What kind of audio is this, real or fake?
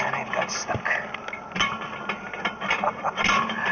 real